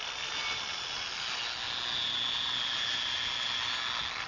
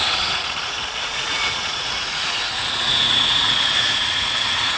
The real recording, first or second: first